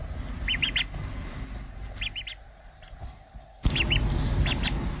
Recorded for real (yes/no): yes